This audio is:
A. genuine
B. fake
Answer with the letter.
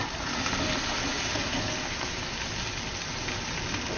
A